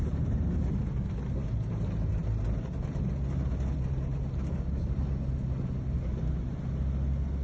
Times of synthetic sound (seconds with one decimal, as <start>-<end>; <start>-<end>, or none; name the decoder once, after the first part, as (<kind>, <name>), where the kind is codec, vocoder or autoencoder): none